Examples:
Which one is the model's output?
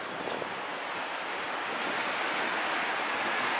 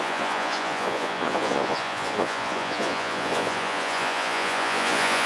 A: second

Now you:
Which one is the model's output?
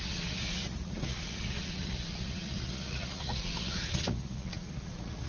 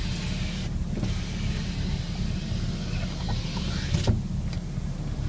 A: first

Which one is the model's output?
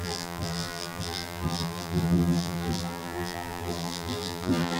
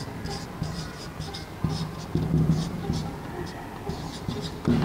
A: first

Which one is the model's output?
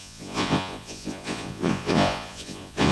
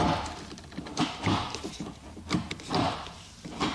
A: first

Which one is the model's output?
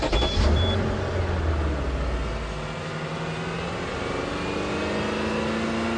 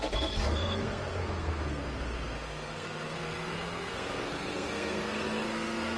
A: second